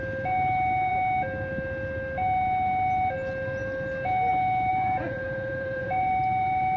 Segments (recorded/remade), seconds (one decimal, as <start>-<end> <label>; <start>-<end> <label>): 0.0-4.7 recorded; 4.7-6.8 remade